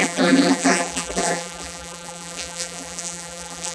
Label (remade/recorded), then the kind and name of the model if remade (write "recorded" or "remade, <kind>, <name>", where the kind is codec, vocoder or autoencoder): remade, vocoder, BigVGAN v2